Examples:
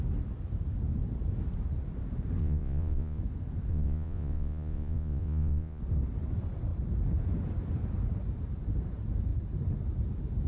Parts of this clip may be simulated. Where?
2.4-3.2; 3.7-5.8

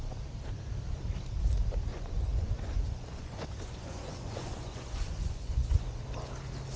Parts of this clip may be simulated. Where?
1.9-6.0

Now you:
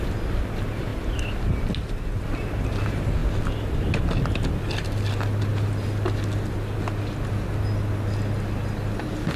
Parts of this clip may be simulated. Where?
none